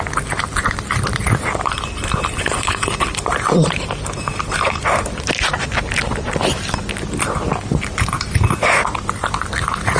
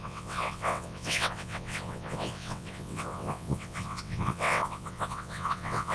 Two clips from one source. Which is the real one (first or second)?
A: first